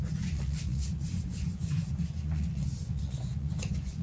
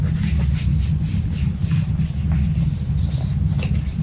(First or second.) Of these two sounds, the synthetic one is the first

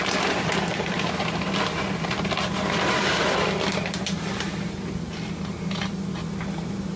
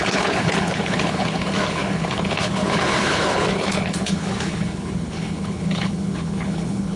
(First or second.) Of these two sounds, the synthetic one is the second